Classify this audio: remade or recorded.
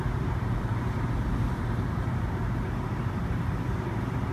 remade